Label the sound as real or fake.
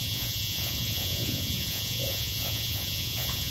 fake